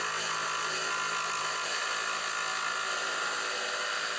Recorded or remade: recorded